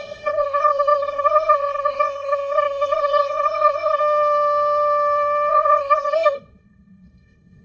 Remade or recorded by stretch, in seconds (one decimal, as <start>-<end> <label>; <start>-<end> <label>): 0.0-4.0 remade; 4.0-5.5 recorded; 5.5-7.6 remade